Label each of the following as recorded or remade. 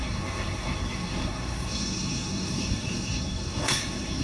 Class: remade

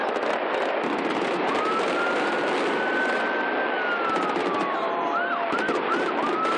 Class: recorded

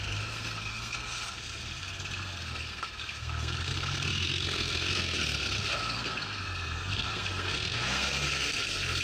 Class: remade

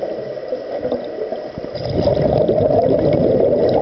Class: recorded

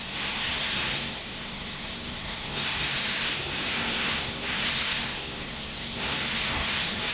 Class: remade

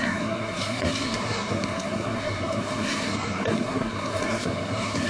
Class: remade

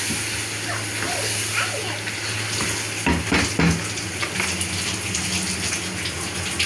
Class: recorded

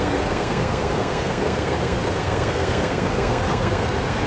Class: remade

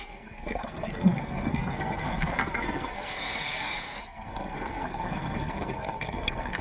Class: remade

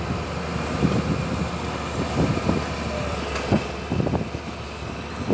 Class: recorded